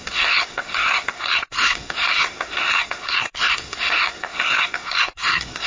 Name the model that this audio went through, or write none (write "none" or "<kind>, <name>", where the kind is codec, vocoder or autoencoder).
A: codec, SNAC